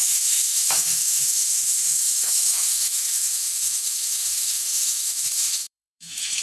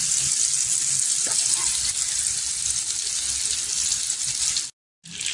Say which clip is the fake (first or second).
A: first